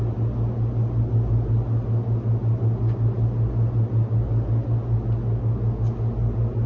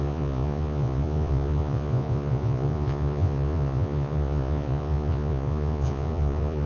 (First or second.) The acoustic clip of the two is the first